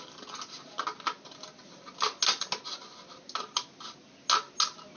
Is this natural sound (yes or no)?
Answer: yes